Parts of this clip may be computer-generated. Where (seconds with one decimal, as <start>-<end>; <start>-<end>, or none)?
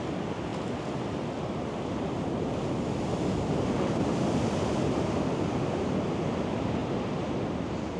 0.0-0.5; 4.2-6.8; 7.6-8.0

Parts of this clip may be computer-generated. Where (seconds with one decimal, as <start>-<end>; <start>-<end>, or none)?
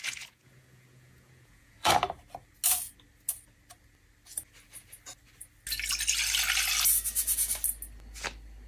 0.0-1.9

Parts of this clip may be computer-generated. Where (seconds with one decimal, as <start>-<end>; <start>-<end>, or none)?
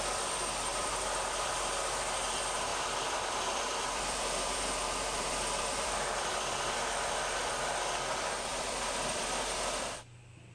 0.7-1.5; 2.7-7.5; 8.5-10.0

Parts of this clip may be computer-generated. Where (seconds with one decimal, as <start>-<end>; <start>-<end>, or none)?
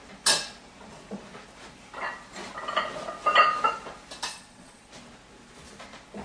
4.3-4.9